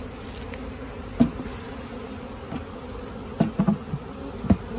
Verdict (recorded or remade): recorded